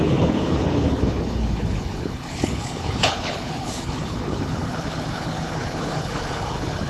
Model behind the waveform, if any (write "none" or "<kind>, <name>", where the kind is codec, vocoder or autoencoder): codec, HILCodec